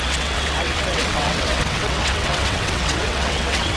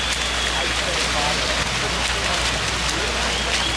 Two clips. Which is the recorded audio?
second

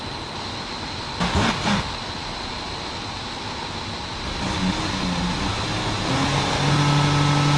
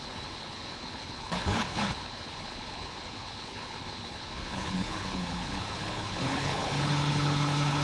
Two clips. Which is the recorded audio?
first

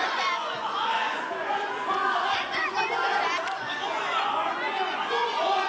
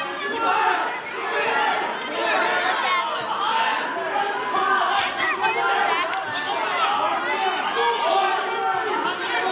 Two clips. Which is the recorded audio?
second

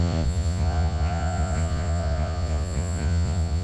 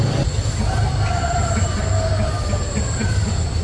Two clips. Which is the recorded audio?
second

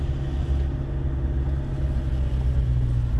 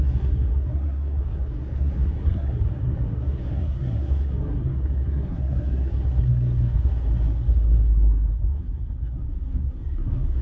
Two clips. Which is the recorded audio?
first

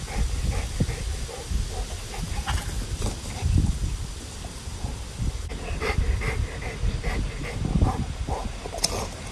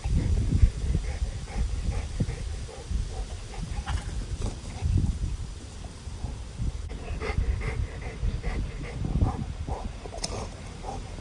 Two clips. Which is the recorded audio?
first